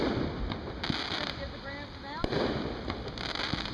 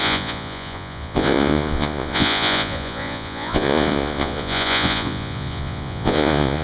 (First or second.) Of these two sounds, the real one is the first